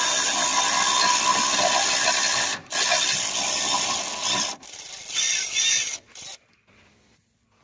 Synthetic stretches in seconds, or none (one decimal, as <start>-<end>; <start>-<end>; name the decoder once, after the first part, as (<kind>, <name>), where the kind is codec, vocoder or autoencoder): none